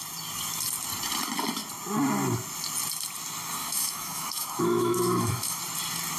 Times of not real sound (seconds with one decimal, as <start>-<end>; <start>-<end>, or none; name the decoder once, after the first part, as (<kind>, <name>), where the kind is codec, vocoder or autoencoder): 3.6-5.6 (autoencoder, DAC-VAE)